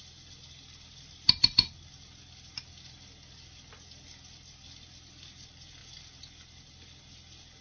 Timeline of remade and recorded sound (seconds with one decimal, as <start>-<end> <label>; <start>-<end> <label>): 0.0-7.6 recorded